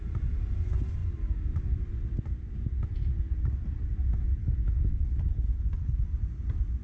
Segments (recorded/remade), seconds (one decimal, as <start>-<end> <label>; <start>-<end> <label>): 0.0-4.4 recorded; 4.4-6.0 remade; 6.0-6.8 recorded